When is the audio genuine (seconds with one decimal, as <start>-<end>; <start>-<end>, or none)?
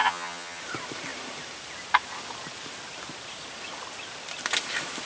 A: 0.6-5.1